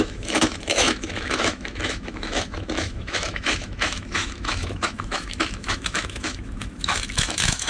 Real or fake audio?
fake